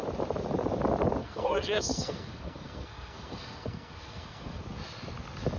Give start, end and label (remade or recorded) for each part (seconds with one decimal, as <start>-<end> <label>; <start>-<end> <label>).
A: 0.0-1.2 recorded; 1.2-4.6 remade; 4.6-5.6 recorded

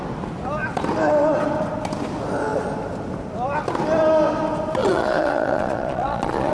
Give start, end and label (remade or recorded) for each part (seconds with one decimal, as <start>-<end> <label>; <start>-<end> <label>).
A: 0.0-4.8 recorded; 4.8-6.5 remade

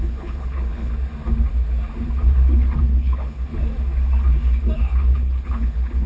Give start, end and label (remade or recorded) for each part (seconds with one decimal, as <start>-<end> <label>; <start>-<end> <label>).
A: 0.0-0.9 remade; 0.9-2.8 recorded; 2.8-3.5 remade; 3.5-4.8 recorded; 4.8-6.1 remade

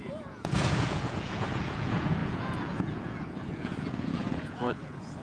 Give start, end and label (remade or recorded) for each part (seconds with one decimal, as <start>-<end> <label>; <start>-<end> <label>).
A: 0.0-5.2 remade

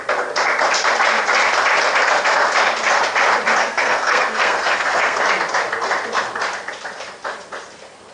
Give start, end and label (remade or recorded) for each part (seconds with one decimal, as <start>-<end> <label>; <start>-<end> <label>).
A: 0.0-3.6 recorded; 3.6-5.2 remade; 5.2-8.1 recorded

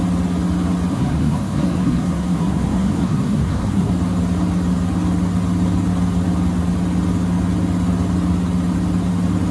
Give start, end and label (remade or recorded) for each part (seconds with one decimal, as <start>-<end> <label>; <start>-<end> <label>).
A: 0.0-0.9 recorded; 0.9-3.9 remade; 3.9-9.5 recorded

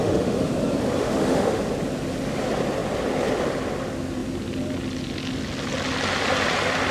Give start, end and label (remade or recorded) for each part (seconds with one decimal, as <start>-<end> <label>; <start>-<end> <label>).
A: 0.0-0.5 remade; 0.5-1.0 recorded; 1.0-1.6 remade; 1.6-6.9 recorded

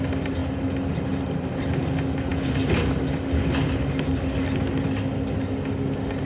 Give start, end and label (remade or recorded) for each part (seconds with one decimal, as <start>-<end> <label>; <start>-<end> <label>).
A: 0.0-6.2 recorded